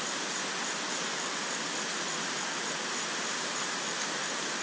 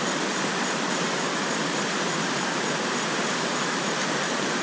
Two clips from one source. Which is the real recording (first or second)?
first